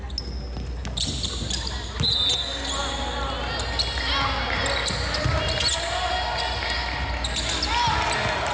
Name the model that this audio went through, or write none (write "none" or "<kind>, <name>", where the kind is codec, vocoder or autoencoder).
none